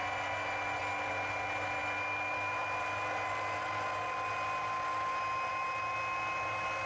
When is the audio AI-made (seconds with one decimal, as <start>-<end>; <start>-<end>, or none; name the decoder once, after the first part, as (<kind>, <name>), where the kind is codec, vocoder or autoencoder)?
none

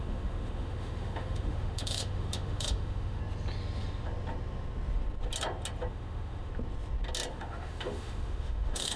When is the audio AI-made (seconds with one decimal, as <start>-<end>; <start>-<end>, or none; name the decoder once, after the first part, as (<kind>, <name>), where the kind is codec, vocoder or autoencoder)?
0.0-3.2 (autoencoder, DAC-VAE); 5.9-6.5; 7.3-9.0